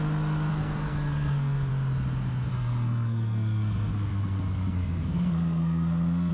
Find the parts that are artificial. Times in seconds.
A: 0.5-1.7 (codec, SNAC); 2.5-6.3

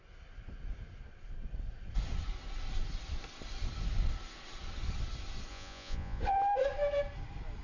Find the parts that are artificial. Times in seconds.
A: 5.5-6.2 (vocoder, Vocos)